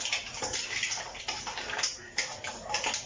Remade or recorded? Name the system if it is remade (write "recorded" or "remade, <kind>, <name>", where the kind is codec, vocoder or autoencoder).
recorded